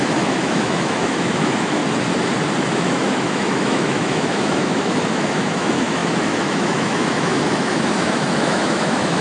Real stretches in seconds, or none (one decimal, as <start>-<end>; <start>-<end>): 1.8-2.7